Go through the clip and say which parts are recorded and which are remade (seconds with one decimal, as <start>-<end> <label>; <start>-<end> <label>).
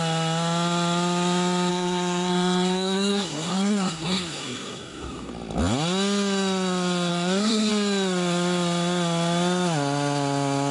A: 0.0-1.7 recorded; 1.7-5.3 remade; 5.3-7.1 recorded; 7.1-7.7 remade; 7.7-10.7 recorded